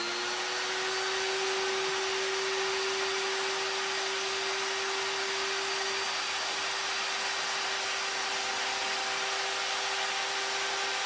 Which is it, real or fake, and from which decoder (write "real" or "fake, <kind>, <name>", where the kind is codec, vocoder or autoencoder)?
real